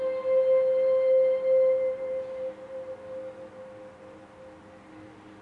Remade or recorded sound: recorded